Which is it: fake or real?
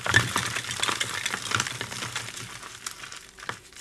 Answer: real